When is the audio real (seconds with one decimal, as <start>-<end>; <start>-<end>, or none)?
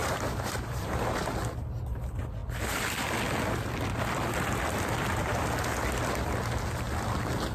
1.0-7.5